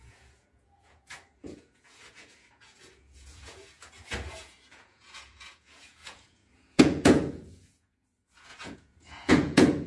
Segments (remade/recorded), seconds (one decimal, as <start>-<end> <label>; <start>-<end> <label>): 0.0-9.9 remade